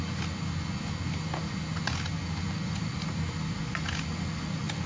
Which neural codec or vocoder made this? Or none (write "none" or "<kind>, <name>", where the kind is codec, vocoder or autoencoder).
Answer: none